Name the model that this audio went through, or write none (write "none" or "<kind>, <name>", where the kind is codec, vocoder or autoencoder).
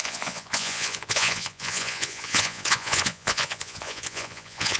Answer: vocoder, Vocos